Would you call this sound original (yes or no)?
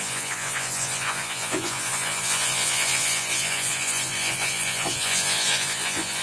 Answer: no